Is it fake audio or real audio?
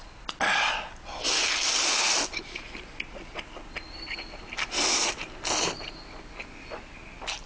real